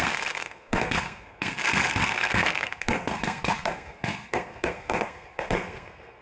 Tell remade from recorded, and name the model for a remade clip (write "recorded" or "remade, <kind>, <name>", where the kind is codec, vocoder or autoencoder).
remade, codec, SNAC